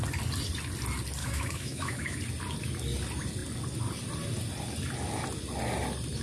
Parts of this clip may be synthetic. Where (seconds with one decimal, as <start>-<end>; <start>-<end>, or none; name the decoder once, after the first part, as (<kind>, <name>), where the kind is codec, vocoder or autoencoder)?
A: 1.2-2.2 (autoencoder, DAC-VAE)